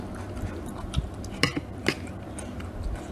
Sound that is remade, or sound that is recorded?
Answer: recorded